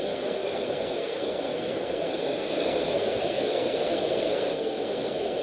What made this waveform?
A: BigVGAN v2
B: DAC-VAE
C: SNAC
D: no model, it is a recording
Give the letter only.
C